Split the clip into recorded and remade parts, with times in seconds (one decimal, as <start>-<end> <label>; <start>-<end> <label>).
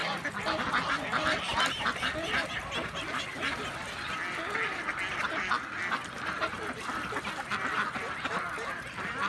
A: 0.0-9.3 recorded